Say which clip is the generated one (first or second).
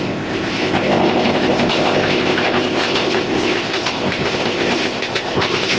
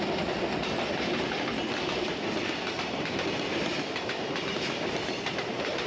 first